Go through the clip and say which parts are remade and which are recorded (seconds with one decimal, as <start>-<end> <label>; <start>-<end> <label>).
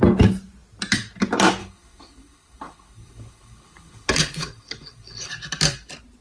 0.0-1.6 recorded; 1.6-5.3 remade; 5.3-6.2 recorded